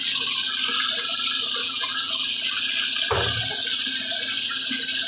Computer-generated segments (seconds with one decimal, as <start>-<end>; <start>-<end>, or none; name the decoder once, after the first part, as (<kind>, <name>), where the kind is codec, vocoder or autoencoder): 1.6-2.1 (vocoder, BigVGAN v2)